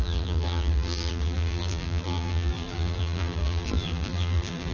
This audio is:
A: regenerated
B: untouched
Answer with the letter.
A